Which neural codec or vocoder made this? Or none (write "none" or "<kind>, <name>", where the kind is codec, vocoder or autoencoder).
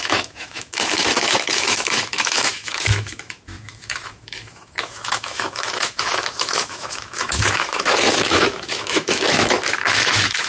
autoencoder, DAC-VAE